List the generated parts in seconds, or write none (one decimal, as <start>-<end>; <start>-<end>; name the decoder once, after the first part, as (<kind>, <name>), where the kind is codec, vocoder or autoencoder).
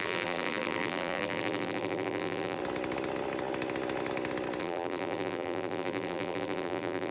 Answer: 0.0-2.6 (vocoder, BigVGAN v2); 4.6-7.1